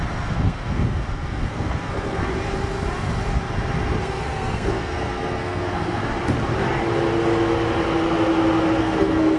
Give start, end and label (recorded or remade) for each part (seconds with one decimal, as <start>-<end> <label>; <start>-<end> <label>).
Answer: 0.0-2.2 remade; 2.2-4.0 recorded; 4.0-6.0 remade; 6.0-8.8 recorded; 8.8-9.4 remade